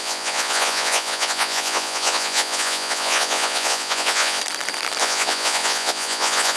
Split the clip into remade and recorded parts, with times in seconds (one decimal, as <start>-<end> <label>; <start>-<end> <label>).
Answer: 0.0-4.4 remade; 4.4-5.0 recorded; 5.0-6.6 remade